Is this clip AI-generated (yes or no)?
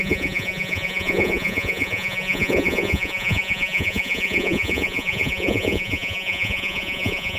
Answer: yes